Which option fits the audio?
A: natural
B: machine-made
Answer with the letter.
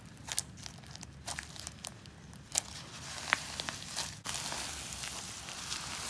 A